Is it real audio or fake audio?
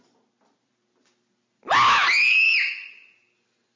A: real